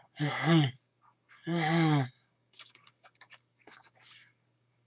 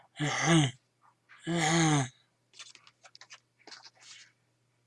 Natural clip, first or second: second